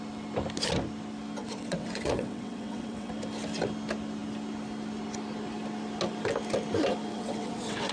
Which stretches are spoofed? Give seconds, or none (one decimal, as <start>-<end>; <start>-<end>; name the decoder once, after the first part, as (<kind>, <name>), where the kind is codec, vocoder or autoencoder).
1.4-3.1 (vocoder, WaveNeXt); 7.1-7.9